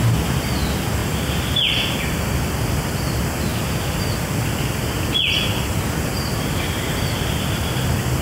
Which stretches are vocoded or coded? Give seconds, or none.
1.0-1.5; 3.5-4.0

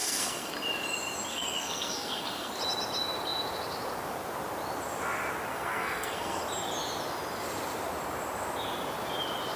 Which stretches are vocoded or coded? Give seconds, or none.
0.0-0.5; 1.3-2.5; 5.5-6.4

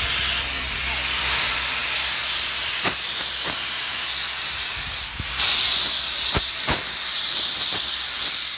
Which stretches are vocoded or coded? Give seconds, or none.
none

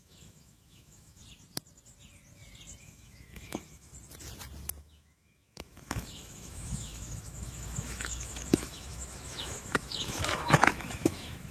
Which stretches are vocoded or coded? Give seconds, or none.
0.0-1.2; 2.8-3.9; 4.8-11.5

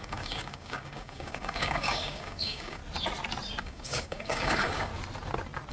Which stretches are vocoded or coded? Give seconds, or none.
0.0-2.8; 3.6-4.9

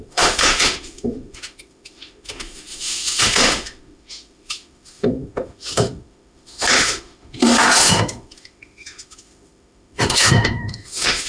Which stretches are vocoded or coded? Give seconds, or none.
0.0-11.3

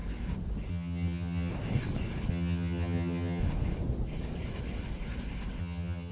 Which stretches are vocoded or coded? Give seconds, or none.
0.7-1.5; 2.3-3.4; 5.6-6.1